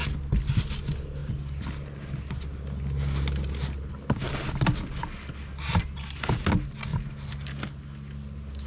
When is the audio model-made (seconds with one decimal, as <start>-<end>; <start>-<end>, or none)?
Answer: none